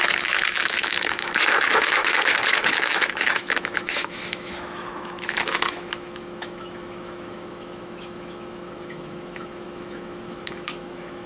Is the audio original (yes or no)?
no